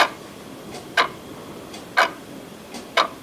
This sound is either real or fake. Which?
real